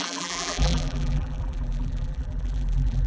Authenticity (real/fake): fake